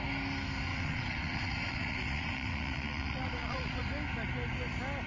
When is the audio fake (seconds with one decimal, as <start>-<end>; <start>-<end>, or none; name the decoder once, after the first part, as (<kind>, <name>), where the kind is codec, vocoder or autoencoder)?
0.7-3.8 (vocoder, WaveNeXt)